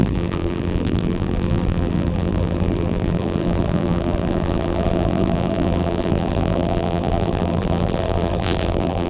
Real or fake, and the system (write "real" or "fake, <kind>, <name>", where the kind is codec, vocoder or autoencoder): fake, vocoder, BigVGAN v2